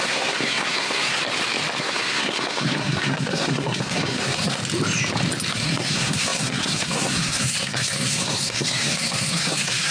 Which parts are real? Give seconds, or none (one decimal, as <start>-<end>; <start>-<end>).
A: 1.2-1.8; 4.6-5.5